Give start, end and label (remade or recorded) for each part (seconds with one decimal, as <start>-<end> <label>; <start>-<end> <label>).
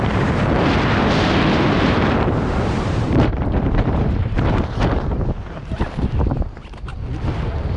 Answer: 0.0-6.9 remade; 6.9-7.8 recorded